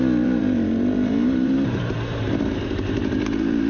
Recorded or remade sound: remade